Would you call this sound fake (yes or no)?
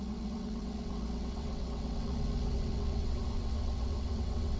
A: yes